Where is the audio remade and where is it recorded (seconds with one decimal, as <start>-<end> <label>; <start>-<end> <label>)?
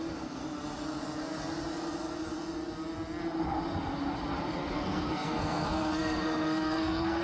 0.0-0.4 remade; 0.4-4.7 recorded; 4.7-7.2 remade